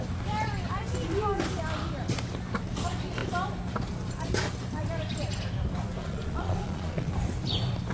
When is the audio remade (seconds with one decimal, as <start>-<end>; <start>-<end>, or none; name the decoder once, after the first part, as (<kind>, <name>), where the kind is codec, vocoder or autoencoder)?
6.0-7.1 (vocoder, Vocos)